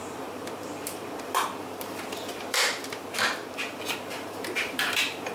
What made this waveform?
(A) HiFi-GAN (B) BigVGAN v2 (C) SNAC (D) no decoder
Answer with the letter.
B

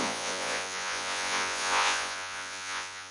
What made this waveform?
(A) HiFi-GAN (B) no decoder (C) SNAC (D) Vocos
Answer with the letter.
D